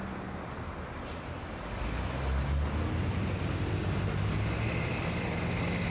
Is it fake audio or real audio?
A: real